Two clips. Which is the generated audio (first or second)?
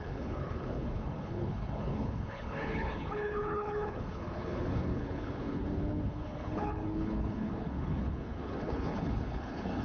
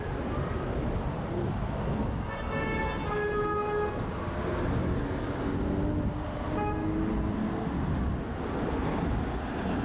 first